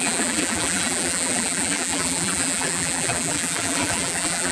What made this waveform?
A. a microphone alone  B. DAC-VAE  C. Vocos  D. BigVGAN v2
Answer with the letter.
D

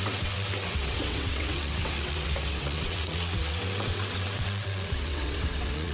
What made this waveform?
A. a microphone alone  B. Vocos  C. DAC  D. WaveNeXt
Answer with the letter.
D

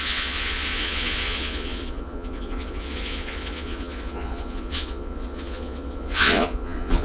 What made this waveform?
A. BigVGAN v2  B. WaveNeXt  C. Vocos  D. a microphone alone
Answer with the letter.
C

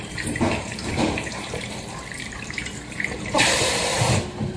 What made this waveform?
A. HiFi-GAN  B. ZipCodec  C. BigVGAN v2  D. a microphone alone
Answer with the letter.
C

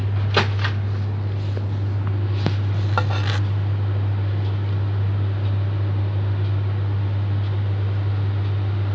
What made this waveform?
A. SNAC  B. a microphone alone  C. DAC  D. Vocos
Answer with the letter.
B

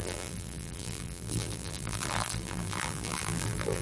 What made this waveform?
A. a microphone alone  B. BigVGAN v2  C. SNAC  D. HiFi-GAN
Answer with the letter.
B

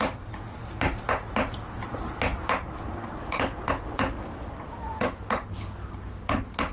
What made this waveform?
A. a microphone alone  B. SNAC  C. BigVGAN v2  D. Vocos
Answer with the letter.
A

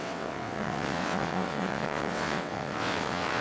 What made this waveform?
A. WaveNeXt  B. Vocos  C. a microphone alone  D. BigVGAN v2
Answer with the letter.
A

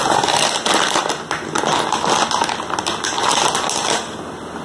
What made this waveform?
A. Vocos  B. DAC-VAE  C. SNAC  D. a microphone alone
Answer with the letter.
D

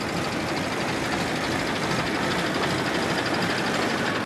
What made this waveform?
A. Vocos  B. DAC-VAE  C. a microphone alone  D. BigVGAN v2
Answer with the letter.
C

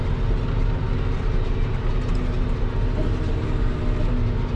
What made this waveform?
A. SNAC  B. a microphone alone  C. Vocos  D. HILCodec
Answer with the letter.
B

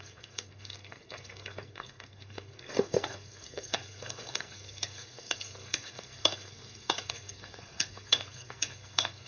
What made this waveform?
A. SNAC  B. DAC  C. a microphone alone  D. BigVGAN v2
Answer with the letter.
A